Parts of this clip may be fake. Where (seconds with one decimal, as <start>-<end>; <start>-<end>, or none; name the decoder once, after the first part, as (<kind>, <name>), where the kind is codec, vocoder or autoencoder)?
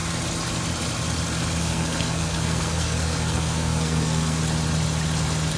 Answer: 1.6-4.4 (codec, SNAC)